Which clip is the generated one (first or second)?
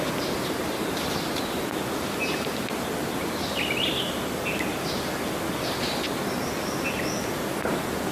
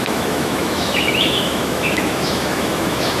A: second